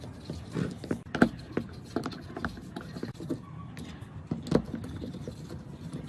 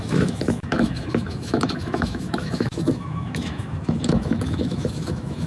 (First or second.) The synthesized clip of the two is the second